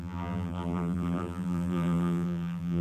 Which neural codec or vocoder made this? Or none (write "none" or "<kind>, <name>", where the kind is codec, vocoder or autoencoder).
vocoder, BigVGAN v2